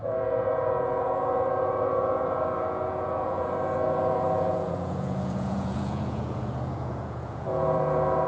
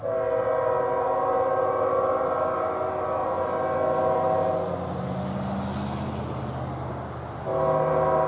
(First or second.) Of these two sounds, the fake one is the first